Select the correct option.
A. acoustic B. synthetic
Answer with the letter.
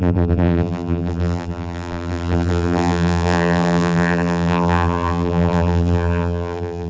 B